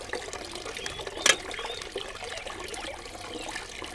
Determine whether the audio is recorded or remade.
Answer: recorded